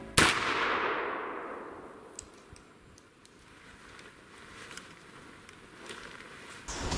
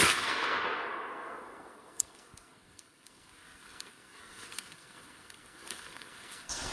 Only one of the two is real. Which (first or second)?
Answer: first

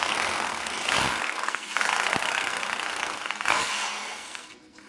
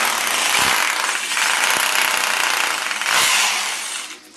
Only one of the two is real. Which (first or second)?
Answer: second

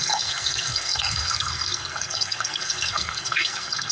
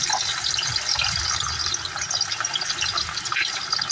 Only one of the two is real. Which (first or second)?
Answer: second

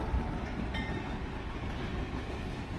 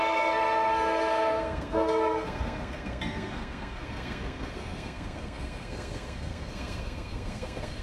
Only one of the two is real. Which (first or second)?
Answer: first